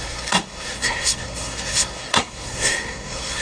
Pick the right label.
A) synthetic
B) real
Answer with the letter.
A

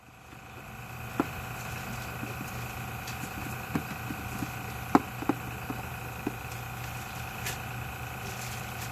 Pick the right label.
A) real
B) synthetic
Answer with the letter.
A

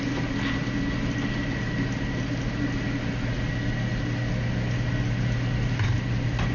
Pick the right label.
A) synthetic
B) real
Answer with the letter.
B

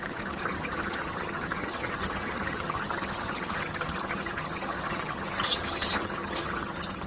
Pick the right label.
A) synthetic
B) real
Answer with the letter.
A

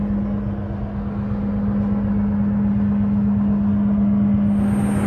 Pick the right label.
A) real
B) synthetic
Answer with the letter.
A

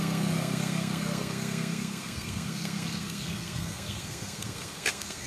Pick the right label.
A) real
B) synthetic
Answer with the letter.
B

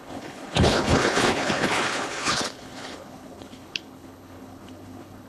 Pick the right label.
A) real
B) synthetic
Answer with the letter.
B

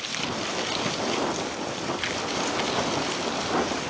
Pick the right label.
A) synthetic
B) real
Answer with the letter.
A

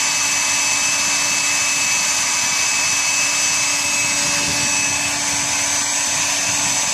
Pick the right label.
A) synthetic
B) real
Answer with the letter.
B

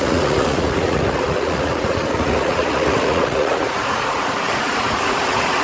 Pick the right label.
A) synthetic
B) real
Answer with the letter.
A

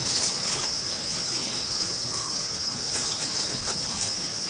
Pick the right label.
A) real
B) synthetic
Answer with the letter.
B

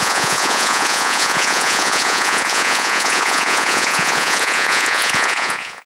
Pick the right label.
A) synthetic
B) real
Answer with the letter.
A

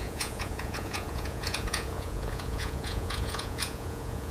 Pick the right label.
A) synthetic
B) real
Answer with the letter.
A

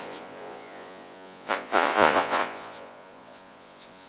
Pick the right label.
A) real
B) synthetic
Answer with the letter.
B